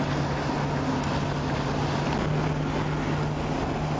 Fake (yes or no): no